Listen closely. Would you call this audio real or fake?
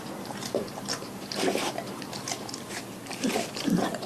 real